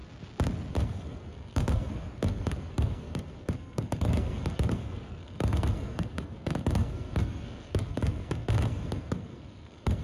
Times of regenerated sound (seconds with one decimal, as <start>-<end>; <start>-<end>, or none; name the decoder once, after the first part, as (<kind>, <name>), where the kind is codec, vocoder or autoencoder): 0.7-10.0 (codec, SNAC)